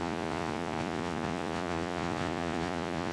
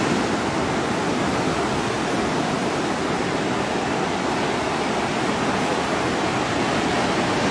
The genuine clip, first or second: second